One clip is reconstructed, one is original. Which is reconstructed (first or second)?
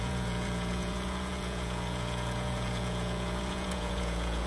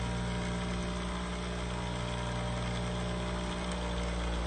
first